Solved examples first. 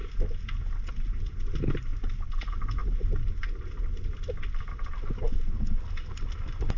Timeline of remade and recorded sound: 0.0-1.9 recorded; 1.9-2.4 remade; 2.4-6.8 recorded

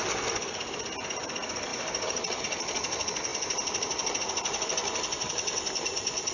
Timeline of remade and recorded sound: 0.0-1.7 recorded; 1.7-2.4 remade; 2.4-3.3 recorded; 3.3-4.2 remade; 4.2-6.3 recorded

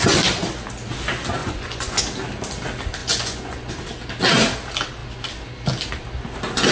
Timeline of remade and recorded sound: 0.0-1.4 recorded; 1.4-2.0 remade; 2.0-3.0 recorded; 3.0-3.7 remade; 3.7-6.7 recorded

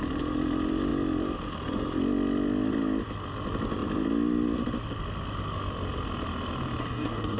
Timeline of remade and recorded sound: 0.0-6.8 recorded; 6.8-7.4 remade

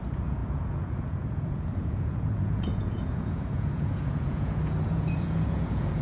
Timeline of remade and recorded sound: 0.0-6.0 remade

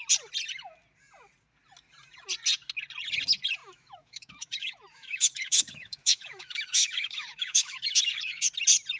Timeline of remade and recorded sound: 0.0-3.6 recorded; 3.6-8.5 remade; 8.5-9.0 recorded